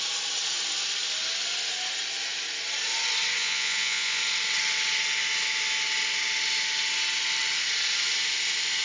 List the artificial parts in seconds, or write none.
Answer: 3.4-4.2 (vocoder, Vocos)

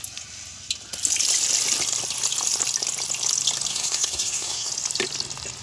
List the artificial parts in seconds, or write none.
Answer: 3.7-4.7 (codec, SNAC)

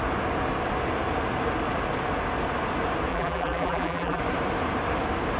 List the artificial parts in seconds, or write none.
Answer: 3.1-4.2 (vocoder, BigVGAN v2)

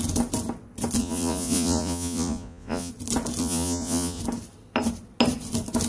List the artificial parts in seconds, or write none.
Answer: 1.0-2.9 (vocoder, Vocos); 3.4-4.2